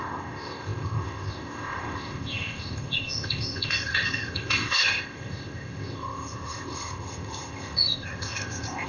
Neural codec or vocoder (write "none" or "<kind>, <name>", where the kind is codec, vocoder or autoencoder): codec, ZipCodec